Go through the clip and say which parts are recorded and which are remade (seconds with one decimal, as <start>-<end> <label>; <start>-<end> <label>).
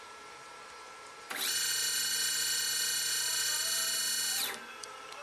0.0-4.0 remade; 4.0-4.8 recorded; 4.8-5.2 remade